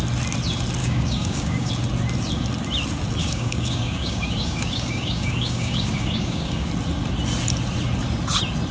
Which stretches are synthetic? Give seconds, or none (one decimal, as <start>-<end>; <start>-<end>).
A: 0.8-1.7; 3.2-6.7